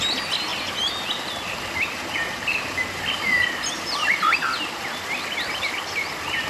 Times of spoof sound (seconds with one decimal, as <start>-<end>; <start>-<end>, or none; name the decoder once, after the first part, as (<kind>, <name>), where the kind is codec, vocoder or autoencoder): 0.5-4.4 (vocoder, BigVGAN v2)

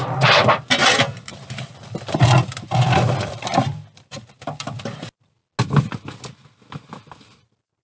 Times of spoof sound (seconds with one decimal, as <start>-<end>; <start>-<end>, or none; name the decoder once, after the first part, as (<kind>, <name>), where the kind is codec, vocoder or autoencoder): 0.0-5.4 (vocoder, BigVGAN v2); 5.9-7.8

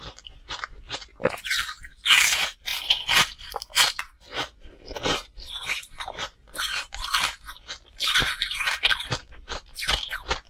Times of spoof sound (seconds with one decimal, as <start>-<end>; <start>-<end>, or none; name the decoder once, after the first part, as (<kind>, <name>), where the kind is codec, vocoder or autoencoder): 0.0-10.5 (vocoder, BigVGAN v2)

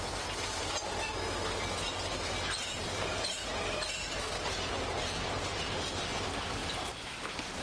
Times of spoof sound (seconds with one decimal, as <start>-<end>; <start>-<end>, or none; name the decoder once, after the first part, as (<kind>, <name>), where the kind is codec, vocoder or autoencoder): none

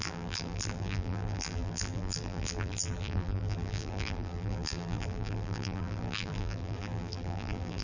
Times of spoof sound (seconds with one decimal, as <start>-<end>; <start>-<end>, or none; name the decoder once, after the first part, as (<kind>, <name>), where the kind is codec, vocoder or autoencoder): 0.0-7.8 (vocoder, BigVGAN v2)

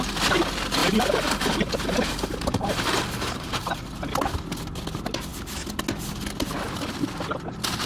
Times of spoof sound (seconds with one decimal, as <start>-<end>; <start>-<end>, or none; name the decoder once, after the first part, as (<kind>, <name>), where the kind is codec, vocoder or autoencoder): 0.8-3.9 (vocoder, BigVGAN v2)

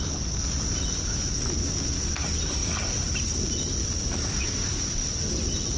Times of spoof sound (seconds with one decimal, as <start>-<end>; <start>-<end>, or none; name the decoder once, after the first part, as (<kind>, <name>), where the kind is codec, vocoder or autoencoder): 2.6-5.1 (vocoder, BigVGAN v2)

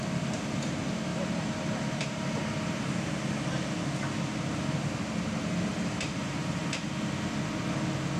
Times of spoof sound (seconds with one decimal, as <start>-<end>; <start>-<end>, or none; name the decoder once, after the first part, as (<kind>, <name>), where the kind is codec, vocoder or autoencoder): 1.1-2.4 (vocoder, BigVGAN v2); 5.7-6.6